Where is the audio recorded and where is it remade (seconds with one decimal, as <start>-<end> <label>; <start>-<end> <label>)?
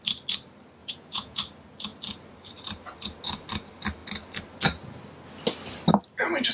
0.0-0.8 recorded; 0.8-1.4 remade; 1.4-6.5 recorded